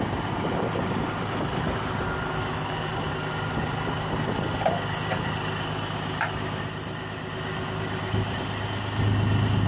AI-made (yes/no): no